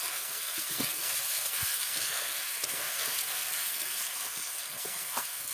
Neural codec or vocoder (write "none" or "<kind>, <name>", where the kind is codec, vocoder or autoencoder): codec, SNAC